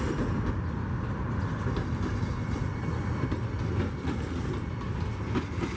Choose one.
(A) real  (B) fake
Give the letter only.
A